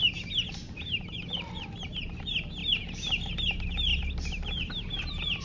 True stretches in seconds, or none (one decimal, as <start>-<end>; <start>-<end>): 2.6-3.3; 3.9-5.0